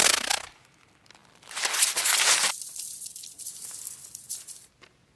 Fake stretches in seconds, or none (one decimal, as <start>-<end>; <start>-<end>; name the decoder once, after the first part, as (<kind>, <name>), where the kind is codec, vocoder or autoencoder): none